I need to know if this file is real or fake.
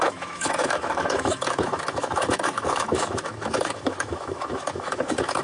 fake